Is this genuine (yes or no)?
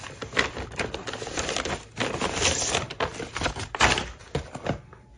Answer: yes